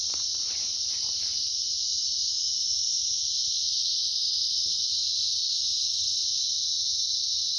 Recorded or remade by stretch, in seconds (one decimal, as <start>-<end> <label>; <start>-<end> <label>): 0.0-7.6 remade